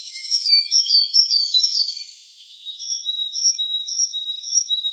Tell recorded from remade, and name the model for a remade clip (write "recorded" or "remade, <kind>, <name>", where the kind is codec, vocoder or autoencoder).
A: remade, autoencoder, DAC-VAE